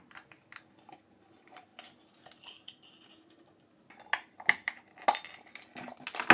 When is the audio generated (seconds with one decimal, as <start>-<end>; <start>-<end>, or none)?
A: none